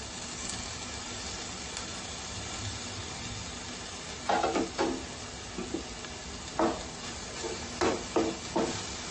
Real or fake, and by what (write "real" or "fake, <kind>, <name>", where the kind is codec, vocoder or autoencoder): real